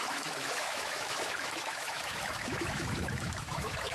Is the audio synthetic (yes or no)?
yes